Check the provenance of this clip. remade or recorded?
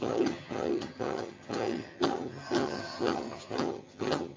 remade